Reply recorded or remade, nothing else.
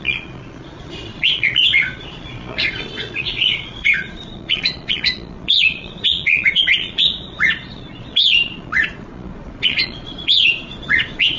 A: remade